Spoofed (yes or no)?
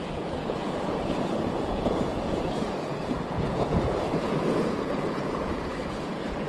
yes